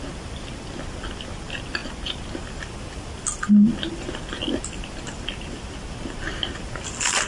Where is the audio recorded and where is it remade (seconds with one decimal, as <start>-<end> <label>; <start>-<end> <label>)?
0.0-7.3 recorded

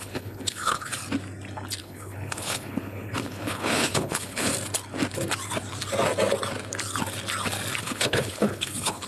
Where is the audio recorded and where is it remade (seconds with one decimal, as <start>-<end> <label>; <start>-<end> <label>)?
0.0-1.0 remade; 1.0-1.8 recorded; 1.8-4.5 remade; 4.5-7.8 recorded; 7.8-9.1 remade

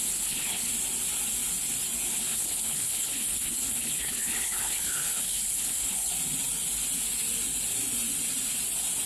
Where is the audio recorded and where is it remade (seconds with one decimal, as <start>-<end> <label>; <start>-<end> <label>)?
0.0-0.7 remade; 0.7-2.1 recorded; 2.1-6.1 remade; 6.1-9.1 recorded

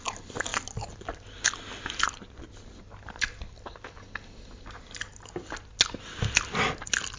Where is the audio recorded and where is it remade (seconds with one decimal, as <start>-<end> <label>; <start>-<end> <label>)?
0.0-7.2 recorded